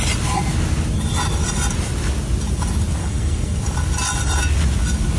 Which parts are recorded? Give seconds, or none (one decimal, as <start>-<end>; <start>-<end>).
0.0-3.0; 3.6-5.2